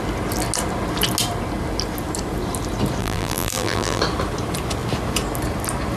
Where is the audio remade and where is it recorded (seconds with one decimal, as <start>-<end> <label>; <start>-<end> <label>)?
0.0-3.0 recorded; 3.0-4.0 remade; 4.0-6.0 recorded